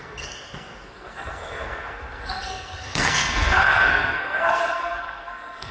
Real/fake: fake